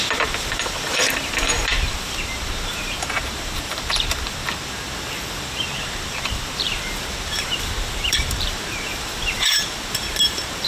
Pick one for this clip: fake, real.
fake